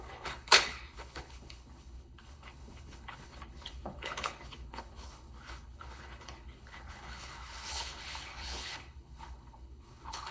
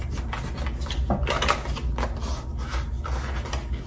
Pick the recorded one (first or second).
second